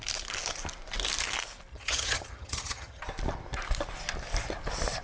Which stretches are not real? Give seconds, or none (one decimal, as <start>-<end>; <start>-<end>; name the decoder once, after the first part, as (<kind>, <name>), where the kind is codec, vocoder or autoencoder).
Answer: 1.7-3.0 (vocoder, HiFi-GAN)